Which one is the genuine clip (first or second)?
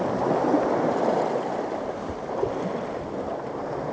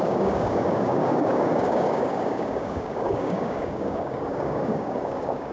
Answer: first